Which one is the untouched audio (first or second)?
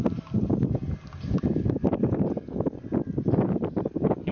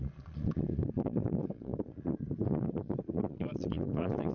first